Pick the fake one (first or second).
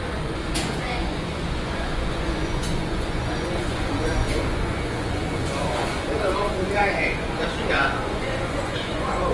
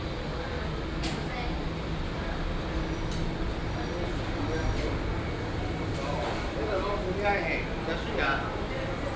first